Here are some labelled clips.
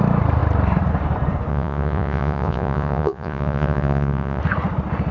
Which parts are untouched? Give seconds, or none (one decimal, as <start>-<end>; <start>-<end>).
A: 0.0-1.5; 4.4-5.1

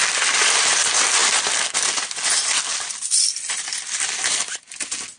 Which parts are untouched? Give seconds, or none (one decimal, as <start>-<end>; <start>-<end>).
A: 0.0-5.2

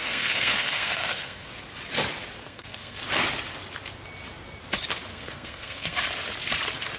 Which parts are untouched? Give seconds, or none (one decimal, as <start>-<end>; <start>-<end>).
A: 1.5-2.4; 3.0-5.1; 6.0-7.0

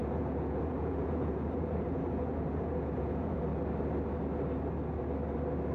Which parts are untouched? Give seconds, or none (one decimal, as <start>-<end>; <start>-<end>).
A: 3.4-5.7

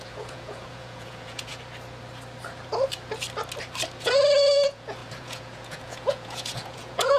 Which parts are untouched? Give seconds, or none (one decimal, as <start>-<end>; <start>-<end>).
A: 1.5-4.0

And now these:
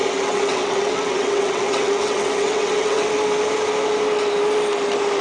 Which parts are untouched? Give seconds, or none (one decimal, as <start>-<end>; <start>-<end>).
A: 3.1-5.2

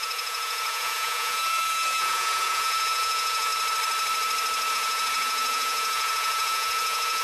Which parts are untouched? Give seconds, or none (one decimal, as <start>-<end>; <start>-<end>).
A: 3.5-4.7